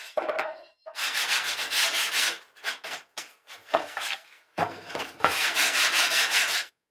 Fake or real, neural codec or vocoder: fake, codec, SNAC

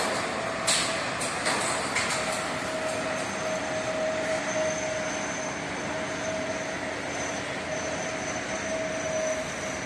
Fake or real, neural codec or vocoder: real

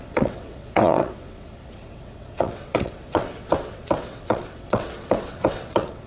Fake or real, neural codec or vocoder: fake, vocoder, WaveNeXt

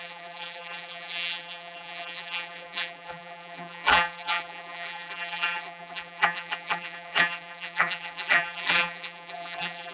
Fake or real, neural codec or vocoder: fake, vocoder, BigVGAN v2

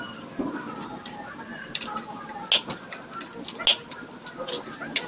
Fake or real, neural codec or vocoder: real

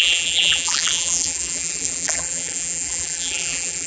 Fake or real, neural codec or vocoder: fake, vocoder, BigVGAN v2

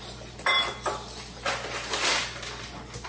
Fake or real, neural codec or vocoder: real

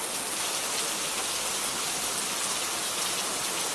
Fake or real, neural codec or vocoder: real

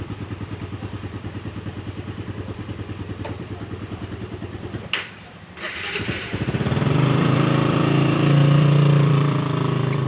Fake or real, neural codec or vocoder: fake, vocoder, BigVGAN v2